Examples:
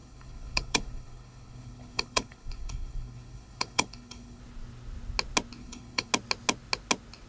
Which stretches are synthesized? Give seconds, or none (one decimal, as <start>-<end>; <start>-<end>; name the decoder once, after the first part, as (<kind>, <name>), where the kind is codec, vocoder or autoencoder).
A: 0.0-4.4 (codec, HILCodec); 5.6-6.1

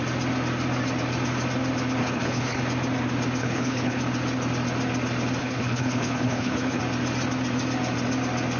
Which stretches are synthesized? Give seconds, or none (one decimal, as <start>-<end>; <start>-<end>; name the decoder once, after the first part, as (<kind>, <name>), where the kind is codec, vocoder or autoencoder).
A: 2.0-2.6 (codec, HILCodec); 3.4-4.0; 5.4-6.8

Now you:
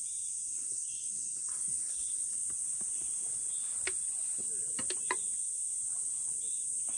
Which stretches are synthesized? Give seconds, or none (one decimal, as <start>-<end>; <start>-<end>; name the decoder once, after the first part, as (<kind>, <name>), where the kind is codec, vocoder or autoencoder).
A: 0.5-2.4 (codec, HILCodec)

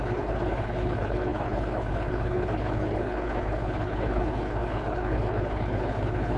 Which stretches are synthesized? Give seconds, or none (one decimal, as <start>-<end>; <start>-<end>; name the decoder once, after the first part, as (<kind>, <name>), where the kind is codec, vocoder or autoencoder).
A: 0.0-6.4 (codec, HILCodec)